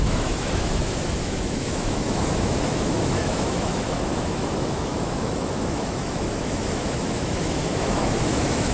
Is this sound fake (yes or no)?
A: yes